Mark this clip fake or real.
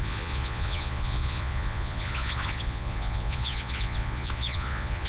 fake